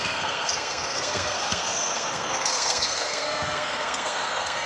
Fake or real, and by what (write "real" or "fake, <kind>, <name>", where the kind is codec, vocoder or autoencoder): fake, codec, SNAC